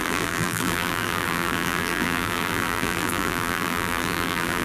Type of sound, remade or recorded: remade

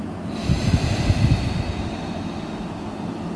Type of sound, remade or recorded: recorded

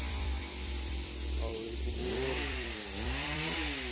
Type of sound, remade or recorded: remade